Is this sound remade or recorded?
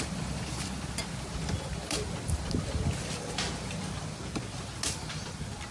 recorded